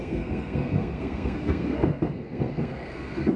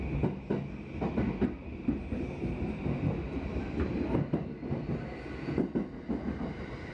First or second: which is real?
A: second